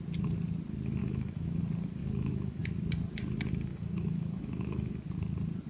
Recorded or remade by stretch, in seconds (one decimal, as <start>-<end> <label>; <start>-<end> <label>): 0.0-1.0 recorded; 1.0-1.6 remade; 1.6-2.0 recorded; 2.0-2.6 remade; 2.6-3.7 recorded; 3.7-4.9 remade; 4.9-5.7 recorded